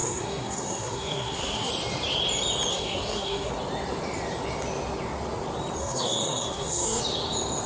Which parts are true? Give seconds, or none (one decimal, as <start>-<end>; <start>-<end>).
1.7-2.7; 3.5-5.8; 7.0-7.7